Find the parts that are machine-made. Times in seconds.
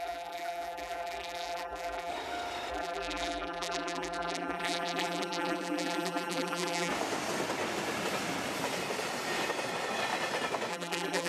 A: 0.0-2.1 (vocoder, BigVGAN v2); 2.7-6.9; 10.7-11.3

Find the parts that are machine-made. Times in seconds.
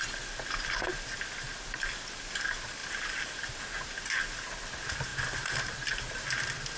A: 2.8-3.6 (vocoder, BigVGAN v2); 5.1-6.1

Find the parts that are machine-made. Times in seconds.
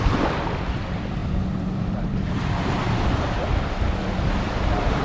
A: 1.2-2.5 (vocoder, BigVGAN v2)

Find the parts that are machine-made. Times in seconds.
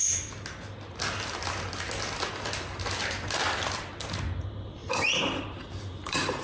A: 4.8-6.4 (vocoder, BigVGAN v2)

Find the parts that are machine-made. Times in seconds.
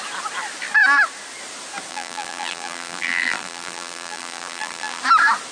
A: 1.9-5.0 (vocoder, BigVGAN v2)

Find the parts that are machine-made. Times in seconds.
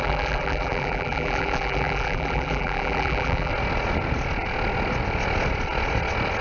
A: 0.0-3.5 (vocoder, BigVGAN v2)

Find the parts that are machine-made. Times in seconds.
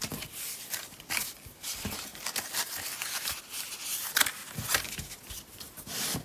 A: 0.0-2.1 (vocoder, BigVGAN v2); 2.9-4.4; 5.2-6.2